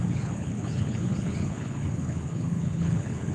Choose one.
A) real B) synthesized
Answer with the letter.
B